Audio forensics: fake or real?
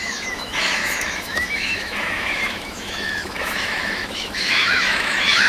fake